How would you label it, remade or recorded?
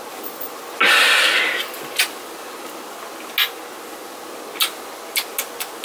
recorded